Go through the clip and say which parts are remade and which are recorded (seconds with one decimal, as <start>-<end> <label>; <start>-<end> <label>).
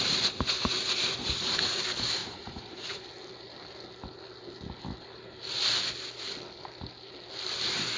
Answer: 0.0-1.2 recorded; 1.2-1.8 remade; 1.8-2.2 recorded; 2.2-3.0 remade; 3.0-8.0 recorded